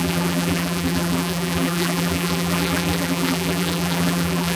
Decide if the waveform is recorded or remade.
remade